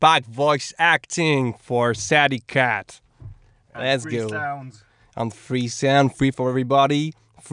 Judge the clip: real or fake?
real